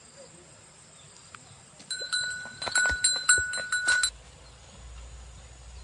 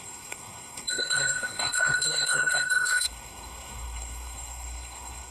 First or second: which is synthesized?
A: second